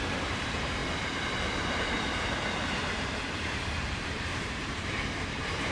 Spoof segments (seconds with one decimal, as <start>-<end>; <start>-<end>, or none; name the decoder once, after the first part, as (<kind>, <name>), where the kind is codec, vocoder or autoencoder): 0.0-0.8 (vocoder, BigVGAN v2); 1.8-5.7

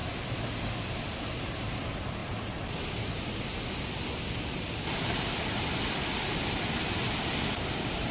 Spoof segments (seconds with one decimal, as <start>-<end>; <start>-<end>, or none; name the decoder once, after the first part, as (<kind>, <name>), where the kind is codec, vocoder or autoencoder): none